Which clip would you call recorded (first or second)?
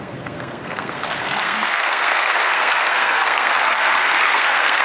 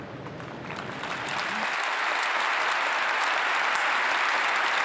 second